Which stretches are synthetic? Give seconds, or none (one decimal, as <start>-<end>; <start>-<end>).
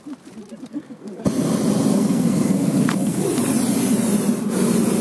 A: 0.7-1.2; 1.9-3.2